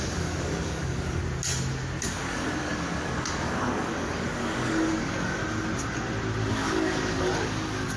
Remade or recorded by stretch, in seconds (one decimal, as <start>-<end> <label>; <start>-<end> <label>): 0.0-1.2 remade; 1.2-2.0 recorded; 2.0-5.4 remade; 5.4-6.5 recorded; 6.5-8.0 remade